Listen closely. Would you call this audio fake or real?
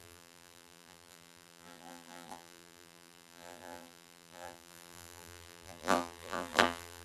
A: fake